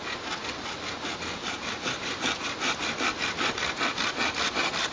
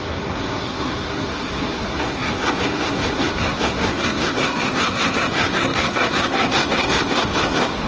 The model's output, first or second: second